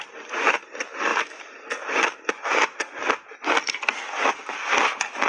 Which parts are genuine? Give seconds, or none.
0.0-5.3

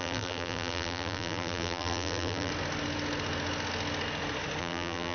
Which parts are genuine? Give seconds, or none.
2.5-4.6